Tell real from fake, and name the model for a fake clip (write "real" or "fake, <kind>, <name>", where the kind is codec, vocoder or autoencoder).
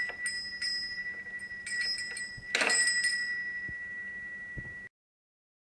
real